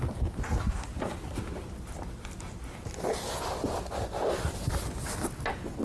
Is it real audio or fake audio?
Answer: real